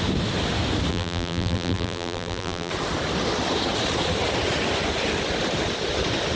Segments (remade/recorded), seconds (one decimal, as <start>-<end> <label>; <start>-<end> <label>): 0.0-0.9 recorded; 0.9-2.7 remade; 2.7-6.4 recorded